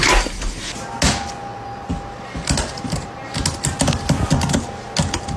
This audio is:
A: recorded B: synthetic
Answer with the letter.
A